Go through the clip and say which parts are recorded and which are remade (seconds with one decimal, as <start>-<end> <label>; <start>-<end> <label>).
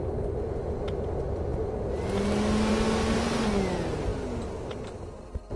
0.0-5.6 recorded